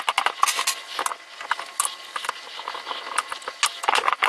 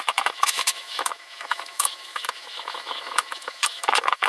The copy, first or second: second